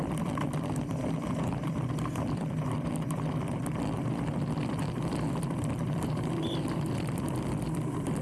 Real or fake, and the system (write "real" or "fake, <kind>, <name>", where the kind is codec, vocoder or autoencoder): fake, vocoder, BigVGAN v2